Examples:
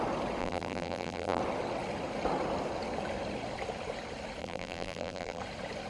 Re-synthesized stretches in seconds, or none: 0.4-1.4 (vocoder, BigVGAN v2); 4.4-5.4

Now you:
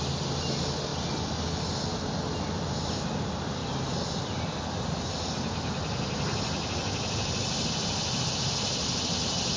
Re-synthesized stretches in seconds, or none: none

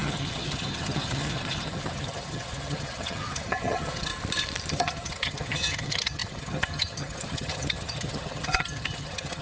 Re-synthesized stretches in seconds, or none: 0.0-4.1 (vocoder, HiFi-GAN); 4.7-9.4

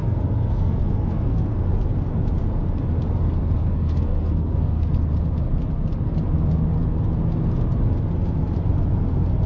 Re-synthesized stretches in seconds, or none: 0.0-1.7 (codec, SNAC); 3.6-4.9

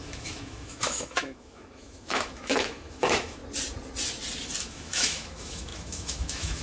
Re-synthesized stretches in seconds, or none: 0.0-3.4 (autoencoder, DAC-VAE); 4.6-6.6

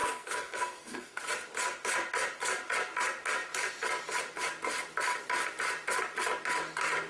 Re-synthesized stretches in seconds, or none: 0.0-1.2 (codec, SNAC)

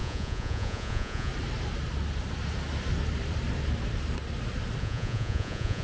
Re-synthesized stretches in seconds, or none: 0.0-1.3 (vocoder, Vocos); 4.8-5.8

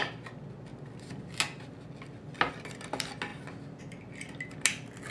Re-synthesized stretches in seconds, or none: none